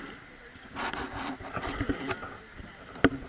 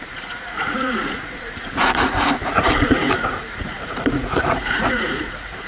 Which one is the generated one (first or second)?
second